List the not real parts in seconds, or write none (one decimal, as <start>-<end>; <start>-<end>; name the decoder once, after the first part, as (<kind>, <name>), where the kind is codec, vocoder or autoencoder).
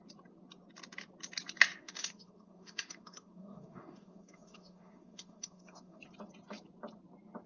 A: 1.8-6.0 (autoencoder, DAC-VAE)